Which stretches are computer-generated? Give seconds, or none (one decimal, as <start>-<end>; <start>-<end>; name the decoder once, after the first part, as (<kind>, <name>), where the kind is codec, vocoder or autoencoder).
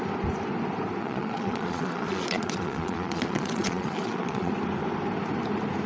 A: 1.0-4.5 (vocoder, Vocos)